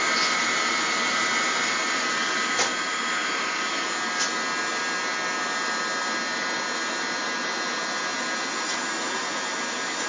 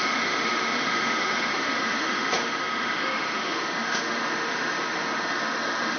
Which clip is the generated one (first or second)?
second